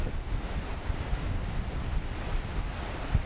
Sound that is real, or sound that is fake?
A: real